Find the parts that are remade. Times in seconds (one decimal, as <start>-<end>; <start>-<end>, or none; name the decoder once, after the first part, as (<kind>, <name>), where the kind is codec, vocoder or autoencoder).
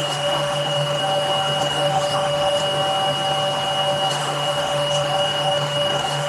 0.0-1.0 (autoencoder, DAC-VAE); 1.6-2.6; 4.1-6.3